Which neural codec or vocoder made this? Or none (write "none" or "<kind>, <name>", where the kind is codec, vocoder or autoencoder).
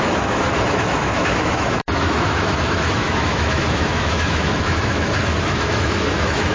autoencoder, DAC-VAE